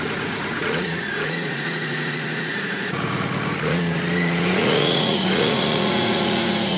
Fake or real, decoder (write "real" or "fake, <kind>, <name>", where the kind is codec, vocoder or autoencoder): fake, vocoder, Vocos